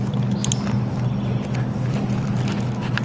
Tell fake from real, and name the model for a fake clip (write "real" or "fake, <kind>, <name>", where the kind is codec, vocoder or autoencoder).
real